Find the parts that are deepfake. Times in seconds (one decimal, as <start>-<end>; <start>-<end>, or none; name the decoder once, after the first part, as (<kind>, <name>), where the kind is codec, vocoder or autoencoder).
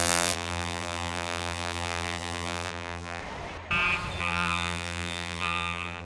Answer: 0.0-3.2 (vocoder, BigVGAN v2); 4.2-6.0